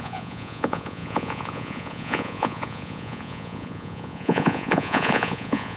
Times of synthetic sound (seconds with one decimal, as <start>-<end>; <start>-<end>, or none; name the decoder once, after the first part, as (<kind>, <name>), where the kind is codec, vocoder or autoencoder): 0.0-5.8 (vocoder, Vocos)